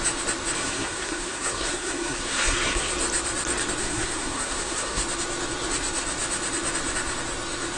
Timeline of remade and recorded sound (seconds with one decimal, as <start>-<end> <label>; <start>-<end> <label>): 0.0-0.6 recorded; 0.6-2.9 remade; 2.9-3.8 recorded; 3.8-5.0 remade; 5.0-7.8 recorded

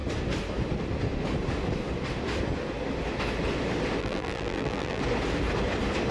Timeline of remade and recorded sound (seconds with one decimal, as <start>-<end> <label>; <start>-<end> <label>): 0.0-4.0 recorded; 4.0-5.0 remade; 5.0-6.1 recorded

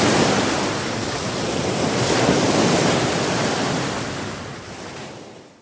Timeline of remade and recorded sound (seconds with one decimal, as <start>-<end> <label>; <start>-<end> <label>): 0.0-5.6 recorded

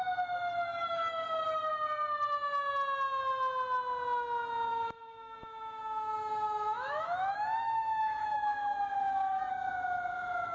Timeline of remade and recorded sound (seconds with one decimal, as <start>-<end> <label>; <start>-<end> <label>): 0.0-4.7 recorded; 4.7-9.4 remade; 9.4-10.5 recorded

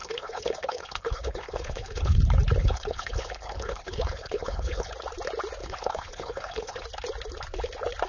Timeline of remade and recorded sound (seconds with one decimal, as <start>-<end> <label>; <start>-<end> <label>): 0.0-2.2 remade; 2.2-2.6 recorded; 2.6-4.9 remade; 4.9-5.6 recorded; 5.6-6.8 remade; 6.8-8.1 recorded

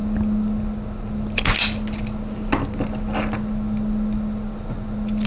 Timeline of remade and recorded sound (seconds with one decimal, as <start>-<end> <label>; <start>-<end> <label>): 0.0-5.3 recorded

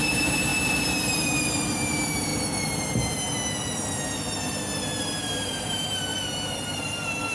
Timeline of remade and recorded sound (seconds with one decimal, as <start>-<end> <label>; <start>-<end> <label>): 0.0-0.5 remade; 0.5-1.2 recorded; 1.2-2.3 remade; 2.3-4.9 recorded; 4.9-6.1 remade; 6.1-7.3 recorded

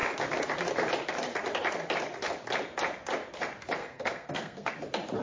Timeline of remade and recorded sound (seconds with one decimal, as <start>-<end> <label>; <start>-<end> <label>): 0.0-3.8 recorded; 3.8-4.7 remade; 4.7-5.2 recorded